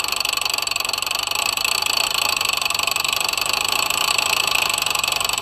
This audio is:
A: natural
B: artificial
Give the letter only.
A